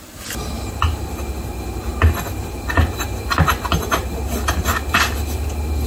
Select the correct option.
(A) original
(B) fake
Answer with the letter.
A